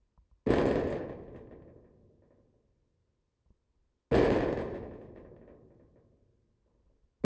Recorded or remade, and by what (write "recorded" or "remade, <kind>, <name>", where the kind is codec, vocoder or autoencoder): recorded